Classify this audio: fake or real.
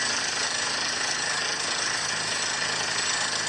real